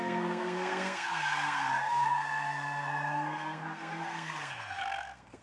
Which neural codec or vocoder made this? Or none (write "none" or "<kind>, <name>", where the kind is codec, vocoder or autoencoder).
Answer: codec, SNAC